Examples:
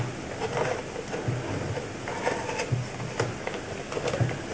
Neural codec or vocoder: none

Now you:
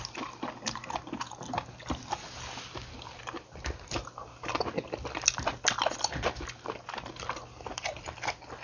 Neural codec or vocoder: none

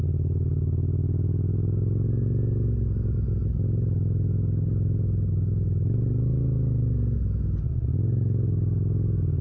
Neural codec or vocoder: none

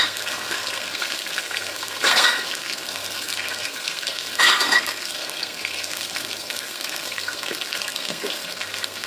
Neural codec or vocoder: codec, SNAC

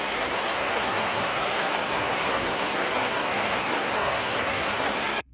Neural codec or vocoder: codec, SNAC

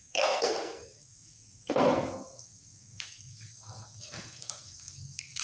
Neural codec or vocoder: codec, SNAC